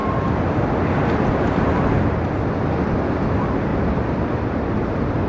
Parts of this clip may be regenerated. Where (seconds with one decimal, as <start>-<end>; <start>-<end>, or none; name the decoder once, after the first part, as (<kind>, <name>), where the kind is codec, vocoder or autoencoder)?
none